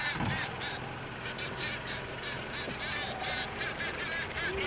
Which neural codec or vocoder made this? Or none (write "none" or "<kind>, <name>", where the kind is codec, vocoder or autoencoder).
none